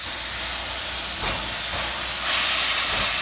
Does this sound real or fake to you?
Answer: real